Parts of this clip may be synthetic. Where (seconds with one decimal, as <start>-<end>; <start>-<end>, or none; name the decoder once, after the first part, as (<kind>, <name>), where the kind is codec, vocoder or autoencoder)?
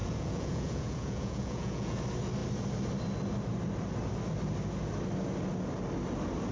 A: 0.0-2.0 (vocoder, Vocos)